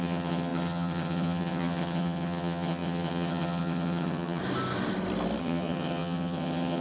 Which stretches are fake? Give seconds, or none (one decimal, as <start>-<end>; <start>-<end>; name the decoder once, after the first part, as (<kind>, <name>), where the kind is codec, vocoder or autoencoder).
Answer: 0.0-4.4 (vocoder, HiFi-GAN); 5.4-6.8